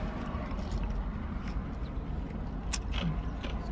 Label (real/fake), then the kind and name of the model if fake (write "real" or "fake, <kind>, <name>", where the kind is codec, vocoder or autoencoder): real